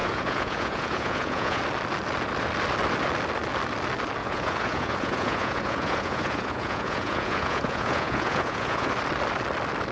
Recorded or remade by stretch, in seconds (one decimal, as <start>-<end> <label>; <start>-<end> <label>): 0.0-1.6 remade; 1.6-4.2 recorded; 4.2-8.9 remade; 8.9-9.9 recorded